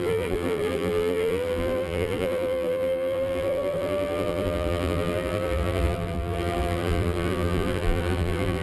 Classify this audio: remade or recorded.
remade